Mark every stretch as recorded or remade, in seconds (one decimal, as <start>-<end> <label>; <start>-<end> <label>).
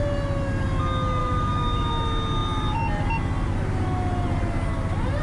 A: 0.0-1.2 recorded; 1.2-1.9 remade; 1.9-5.2 recorded